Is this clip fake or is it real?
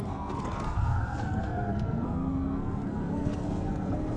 fake